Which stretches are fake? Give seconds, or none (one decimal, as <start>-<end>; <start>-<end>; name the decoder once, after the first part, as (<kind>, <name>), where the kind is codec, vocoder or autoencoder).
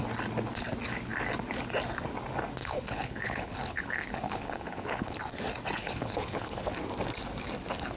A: 2.6-5.2 (codec, HILCodec); 5.8-6.6